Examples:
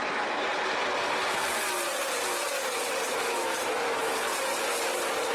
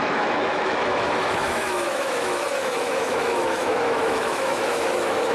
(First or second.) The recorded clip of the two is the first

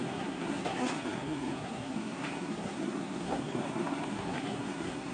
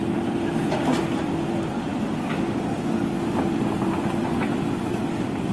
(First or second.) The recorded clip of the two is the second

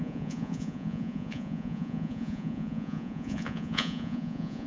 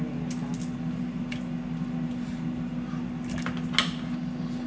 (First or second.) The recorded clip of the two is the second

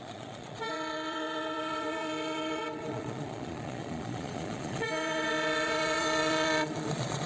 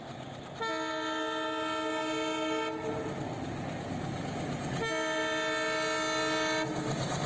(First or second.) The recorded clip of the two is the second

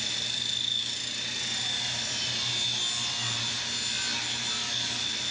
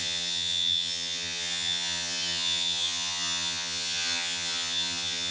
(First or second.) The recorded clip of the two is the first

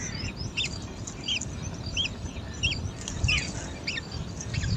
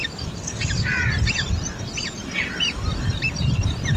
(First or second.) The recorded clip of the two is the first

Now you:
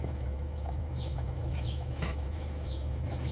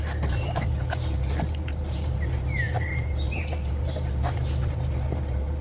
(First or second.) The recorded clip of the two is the second